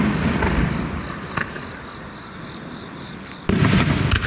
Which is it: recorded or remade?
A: recorded